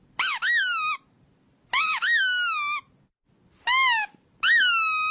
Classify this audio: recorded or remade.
recorded